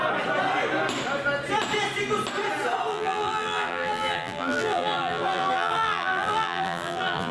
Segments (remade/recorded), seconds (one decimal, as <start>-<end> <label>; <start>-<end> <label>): 0.0-2.9 recorded; 2.9-7.3 remade